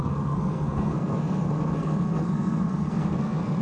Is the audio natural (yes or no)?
no